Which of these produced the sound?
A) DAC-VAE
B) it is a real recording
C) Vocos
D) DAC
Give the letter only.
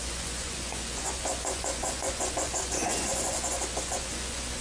C